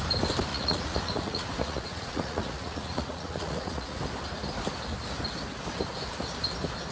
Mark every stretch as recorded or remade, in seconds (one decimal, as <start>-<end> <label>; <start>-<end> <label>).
0.0-0.5 recorded; 0.5-4.0 remade; 4.0-6.9 recorded